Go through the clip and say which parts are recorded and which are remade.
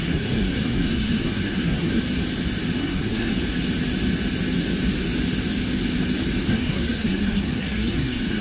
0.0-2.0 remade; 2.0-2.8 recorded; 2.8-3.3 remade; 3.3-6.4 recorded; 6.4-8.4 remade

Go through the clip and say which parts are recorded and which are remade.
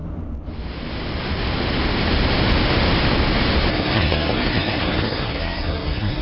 0.0-3.7 recorded; 3.7-6.2 remade